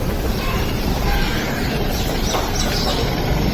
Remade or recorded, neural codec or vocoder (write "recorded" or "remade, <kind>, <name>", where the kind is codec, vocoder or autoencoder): recorded